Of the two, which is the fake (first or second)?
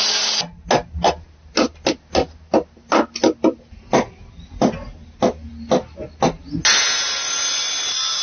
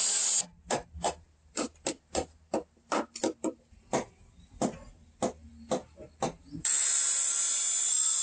second